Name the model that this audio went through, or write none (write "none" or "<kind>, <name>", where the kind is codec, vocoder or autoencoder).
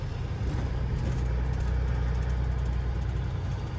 none